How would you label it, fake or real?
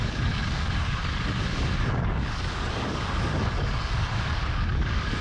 fake